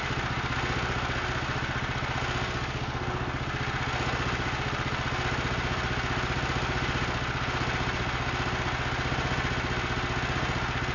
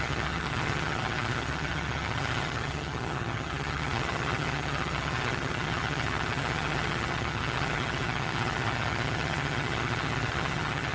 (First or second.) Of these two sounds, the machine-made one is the second